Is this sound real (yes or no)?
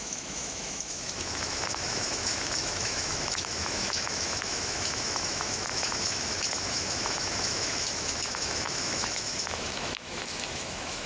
no